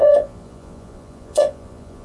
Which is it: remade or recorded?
remade